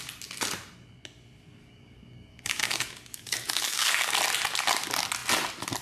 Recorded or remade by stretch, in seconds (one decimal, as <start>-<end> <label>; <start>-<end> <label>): 0.0-1.6 recorded; 1.6-4.2 remade; 4.2-5.8 recorded